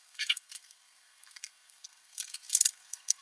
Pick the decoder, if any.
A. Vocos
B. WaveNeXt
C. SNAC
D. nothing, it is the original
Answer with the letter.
C